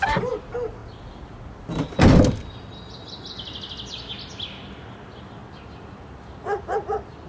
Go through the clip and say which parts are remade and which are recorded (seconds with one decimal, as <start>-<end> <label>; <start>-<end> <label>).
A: 0.0-7.3 recorded